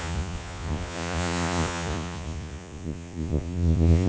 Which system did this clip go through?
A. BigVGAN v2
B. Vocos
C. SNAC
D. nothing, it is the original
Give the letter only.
B